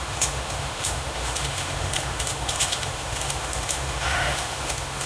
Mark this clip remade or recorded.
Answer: remade